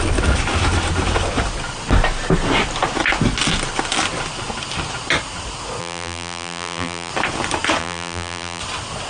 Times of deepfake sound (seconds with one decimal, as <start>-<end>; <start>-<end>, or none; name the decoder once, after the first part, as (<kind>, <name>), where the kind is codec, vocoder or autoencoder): 5.8-7.1 (vocoder, BigVGAN v2); 7.8-8.6

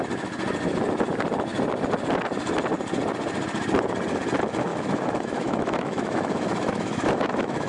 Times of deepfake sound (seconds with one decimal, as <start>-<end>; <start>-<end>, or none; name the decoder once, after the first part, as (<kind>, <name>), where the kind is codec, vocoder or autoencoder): 4.7-7.7 (autoencoder, DAC-VAE)

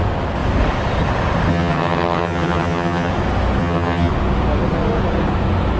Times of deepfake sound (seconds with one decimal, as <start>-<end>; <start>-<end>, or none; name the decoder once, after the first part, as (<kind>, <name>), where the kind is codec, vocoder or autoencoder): 1.5-3.1 (vocoder, HiFi-GAN); 3.6-4.1

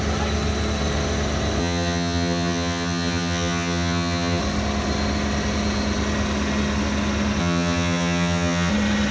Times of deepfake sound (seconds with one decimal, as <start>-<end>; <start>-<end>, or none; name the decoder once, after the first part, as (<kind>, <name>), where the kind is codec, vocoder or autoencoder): 1.6-4.4 (vocoder, HiFi-GAN); 7.4-8.7

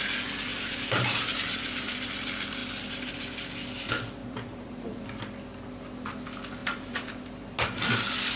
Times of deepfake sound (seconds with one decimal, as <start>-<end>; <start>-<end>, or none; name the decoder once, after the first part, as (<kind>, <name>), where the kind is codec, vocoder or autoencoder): 0.5-2.1 (vocoder, BigVGAN v2); 4.2-5.0; 6.6-7.1

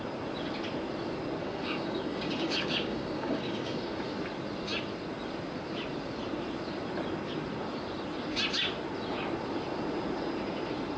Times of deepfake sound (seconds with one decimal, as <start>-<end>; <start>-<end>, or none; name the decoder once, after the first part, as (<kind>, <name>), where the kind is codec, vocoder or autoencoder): 1.4-4.0 (codec, DAC)